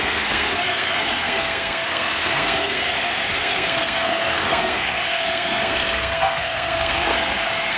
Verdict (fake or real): fake